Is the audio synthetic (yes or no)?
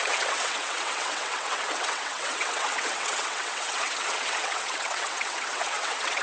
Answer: yes